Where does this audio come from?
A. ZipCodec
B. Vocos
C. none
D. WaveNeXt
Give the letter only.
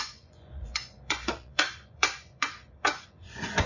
B